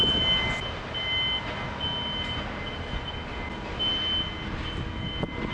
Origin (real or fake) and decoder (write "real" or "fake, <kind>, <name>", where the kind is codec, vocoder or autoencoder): real